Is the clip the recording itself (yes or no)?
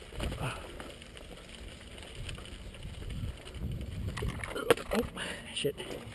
yes